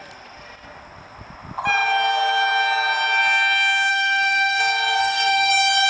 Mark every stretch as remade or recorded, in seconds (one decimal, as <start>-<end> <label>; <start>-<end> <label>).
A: 0.0-3.9 recorded; 3.9-4.6 remade; 4.6-5.0 recorded; 5.0-5.5 remade; 5.5-5.9 recorded